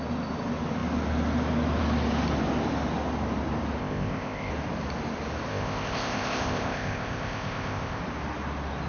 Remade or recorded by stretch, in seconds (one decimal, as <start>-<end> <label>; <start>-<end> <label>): 0.0-3.8 recorded; 3.8-4.5 remade; 4.5-5.5 recorded; 5.5-8.0 remade; 8.0-8.9 recorded